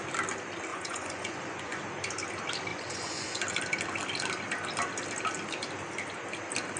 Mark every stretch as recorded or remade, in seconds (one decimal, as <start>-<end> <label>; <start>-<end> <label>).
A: 0.0-0.7 recorded; 0.7-1.8 remade; 1.8-2.7 recorded; 2.7-3.4 remade; 3.4-6.8 recorded

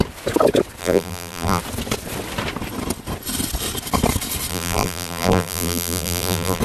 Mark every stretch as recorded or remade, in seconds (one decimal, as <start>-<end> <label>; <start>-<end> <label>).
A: 0.0-0.8 recorded; 0.8-1.6 remade; 1.6-4.5 recorded; 4.5-6.6 remade

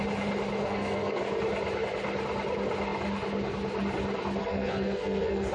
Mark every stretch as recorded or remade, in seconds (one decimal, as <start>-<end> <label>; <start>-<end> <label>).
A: 0.0-0.6 recorded; 0.6-1.2 remade; 1.2-4.4 recorded; 4.4-5.5 remade

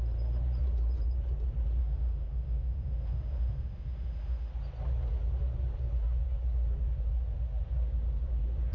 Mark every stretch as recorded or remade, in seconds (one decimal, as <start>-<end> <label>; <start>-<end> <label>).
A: 0.0-1.8 recorded; 1.8-4.5 remade; 4.5-8.7 recorded

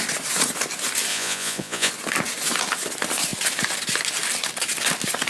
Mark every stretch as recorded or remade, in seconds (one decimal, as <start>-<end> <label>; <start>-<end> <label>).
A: 0.0-1.1 recorded; 1.1-1.9 remade; 1.9-5.3 recorded

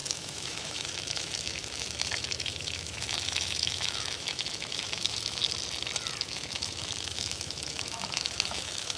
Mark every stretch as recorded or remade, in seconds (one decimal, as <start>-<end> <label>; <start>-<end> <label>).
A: 0.0-5.4 remade; 5.4-6.2 recorded; 6.2-9.0 remade

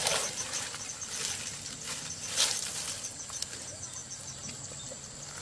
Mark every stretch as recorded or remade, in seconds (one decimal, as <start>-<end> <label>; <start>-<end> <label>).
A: 0.0-5.4 recorded

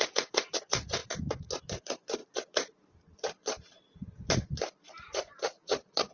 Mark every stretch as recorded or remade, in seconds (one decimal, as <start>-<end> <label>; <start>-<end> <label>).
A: 0.0-6.1 remade